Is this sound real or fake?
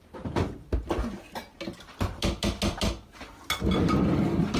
real